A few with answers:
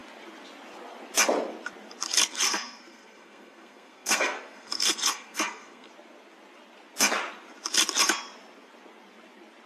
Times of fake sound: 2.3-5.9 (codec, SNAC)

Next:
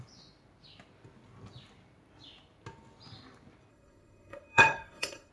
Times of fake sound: 3.7-5.3 (codec, SNAC)